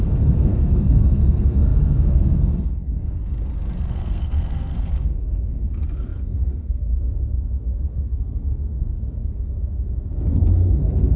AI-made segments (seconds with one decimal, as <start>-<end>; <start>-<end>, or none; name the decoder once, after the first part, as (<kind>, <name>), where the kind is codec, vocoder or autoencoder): 0.0-11.2 (codec, SNAC)